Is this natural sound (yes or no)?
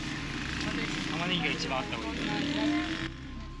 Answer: yes